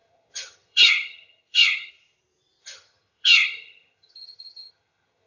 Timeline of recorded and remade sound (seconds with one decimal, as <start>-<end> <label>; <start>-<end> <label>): 0.0-1.9 remade; 1.9-2.6 recorded; 2.6-5.3 remade